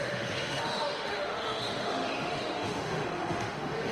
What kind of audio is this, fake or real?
fake